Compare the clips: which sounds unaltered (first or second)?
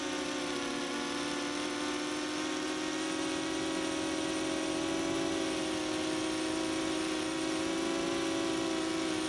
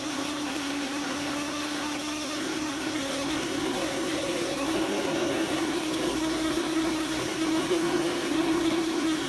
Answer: first